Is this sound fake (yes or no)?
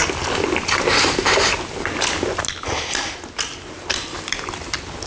no